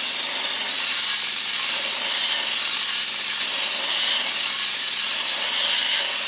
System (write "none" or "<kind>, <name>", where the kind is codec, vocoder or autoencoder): vocoder, BigVGAN v2